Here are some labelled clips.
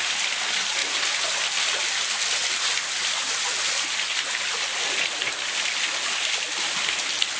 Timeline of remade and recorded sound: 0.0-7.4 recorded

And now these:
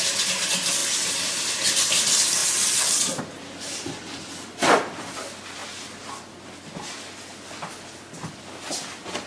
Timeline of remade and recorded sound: 0.0-9.3 recorded

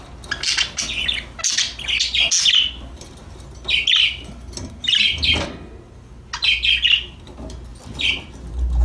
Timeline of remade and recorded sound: 0.0-7.7 recorded; 7.7-8.3 remade; 8.3-8.8 recorded

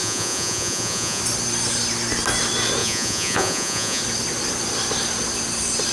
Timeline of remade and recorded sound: 0.0-1.2 remade; 1.2-2.8 recorded; 2.8-4.0 remade; 4.0-5.9 recorded

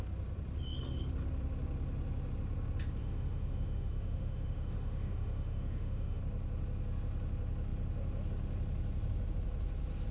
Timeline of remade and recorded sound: 0.0-3.0 recorded; 3.0-6.2 remade; 6.2-10.1 recorded

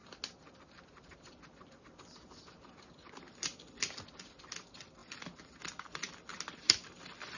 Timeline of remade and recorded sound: 0.0-7.4 recorded

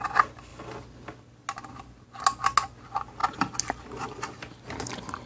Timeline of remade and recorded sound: 0.0-5.3 recorded

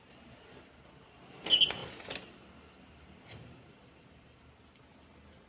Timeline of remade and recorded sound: 0.0-5.5 recorded